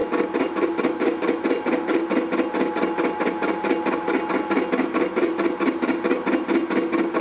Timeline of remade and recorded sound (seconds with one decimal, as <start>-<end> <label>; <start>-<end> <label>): 0.0-7.2 recorded